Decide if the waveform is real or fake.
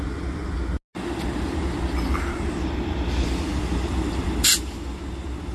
real